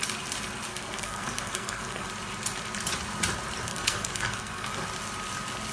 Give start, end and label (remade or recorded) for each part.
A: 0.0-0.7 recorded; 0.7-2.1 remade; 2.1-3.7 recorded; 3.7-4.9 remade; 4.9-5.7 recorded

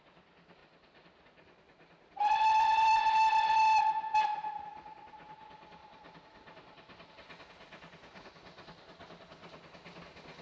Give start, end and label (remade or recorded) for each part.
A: 0.0-10.4 recorded